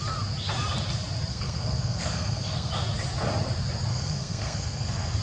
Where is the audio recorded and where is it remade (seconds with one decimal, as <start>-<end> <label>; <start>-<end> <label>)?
0.0-1.3 recorded; 1.3-2.7 remade; 2.7-3.9 recorded; 3.9-5.2 remade

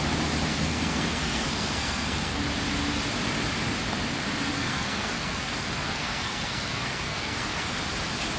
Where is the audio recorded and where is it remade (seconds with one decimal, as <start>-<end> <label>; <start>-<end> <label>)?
0.0-0.5 recorded; 0.5-2.4 remade; 2.4-4.5 recorded; 4.5-7.8 remade; 7.8-8.4 recorded